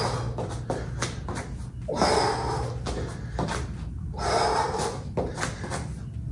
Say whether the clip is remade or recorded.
recorded